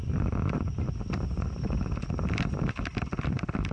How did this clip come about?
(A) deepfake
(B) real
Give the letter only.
B